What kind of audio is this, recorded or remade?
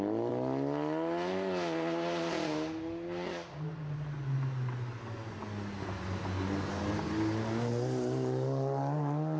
recorded